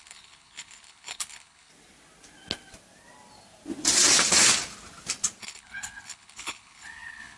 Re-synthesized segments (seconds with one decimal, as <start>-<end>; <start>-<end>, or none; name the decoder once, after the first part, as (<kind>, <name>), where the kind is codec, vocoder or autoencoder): 0.0-1.7 (codec, HILCodec); 5.4-7.4

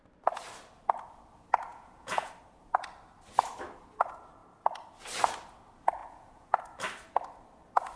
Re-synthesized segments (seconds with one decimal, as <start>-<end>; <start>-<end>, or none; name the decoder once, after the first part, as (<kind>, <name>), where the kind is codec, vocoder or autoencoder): 1.7-2.3 (vocoder, Vocos); 6.0-6.6

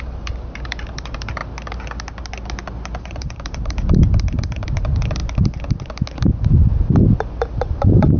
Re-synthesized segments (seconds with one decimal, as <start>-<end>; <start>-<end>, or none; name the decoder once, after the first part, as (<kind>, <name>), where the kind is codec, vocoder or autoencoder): 0.0-1.4 (vocoder, BigVGAN v2); 3.0-5.2; 6.3-6.7; 7.5-8.2

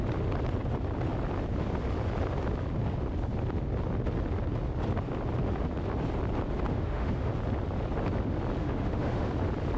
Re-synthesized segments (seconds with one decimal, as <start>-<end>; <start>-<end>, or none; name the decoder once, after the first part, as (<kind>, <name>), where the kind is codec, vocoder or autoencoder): 6.7-7.3 (autoencoder, DAC-VAE); 8.6-9.3

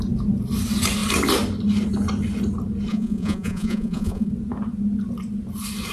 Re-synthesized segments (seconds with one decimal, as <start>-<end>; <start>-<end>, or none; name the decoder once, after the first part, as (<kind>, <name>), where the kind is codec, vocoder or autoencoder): 2.9-4.3 (vocoder, Vocos)

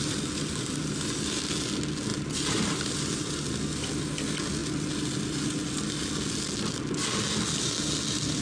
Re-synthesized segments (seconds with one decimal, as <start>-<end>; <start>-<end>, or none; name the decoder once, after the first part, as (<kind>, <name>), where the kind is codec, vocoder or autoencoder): 2.1-2.9 (vocoder, BigVGAN v2)